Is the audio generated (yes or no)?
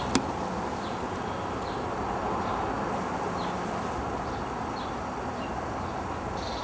no